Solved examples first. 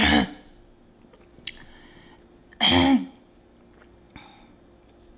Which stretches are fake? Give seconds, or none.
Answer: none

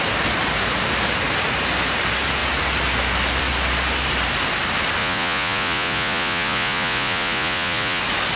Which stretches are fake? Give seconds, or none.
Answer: 5.0-8.0 (vocoder, Vocos)

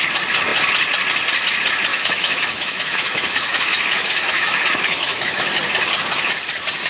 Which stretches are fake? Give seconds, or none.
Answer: 1.9-5.5 (autoencoder, DAC-VAE)

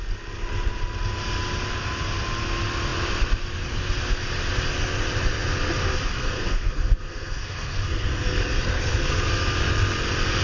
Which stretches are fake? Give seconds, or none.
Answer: 6.1-9.3 (codec, SNAC)

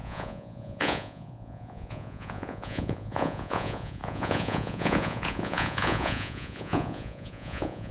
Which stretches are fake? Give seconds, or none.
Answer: 0.0-7.9 (vocoder, Vocos)

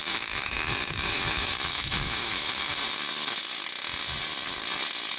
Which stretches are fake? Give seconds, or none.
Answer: 0.0-2.8 (autoencoder, DAC-VAE)